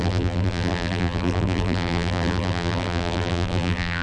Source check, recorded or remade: remade